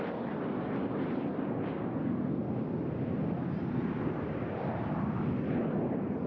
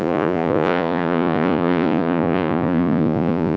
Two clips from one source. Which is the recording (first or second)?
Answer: first